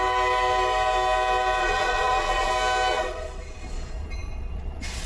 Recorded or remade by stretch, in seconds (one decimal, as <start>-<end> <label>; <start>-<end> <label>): 0.0-1.6 recorded; 1.6-2.5 remade; 2.5-2.9 recorded; 2.9-5.1 remade